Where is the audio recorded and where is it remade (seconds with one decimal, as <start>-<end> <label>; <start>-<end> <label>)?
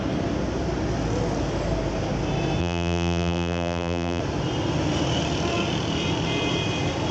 0.0-2.6 recorded; 2.6-4.2 remade; 4.2-7.1 recorded